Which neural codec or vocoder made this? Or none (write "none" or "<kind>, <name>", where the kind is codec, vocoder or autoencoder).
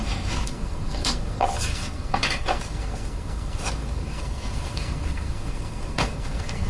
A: codec, SNAC